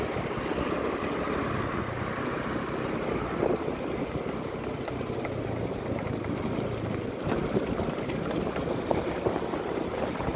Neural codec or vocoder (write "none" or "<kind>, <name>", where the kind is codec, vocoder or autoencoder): none